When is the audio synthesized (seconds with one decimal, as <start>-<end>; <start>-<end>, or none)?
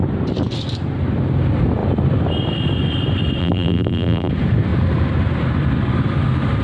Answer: 3.4-4.3